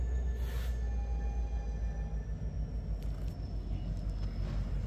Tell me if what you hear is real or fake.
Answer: real